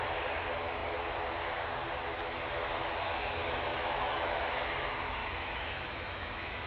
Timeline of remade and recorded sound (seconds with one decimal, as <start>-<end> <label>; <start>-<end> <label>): 0.0-3.7 recorded; 3.7-4.4 remade; 4.4-5.2 recorded; 5.2-6.7 remade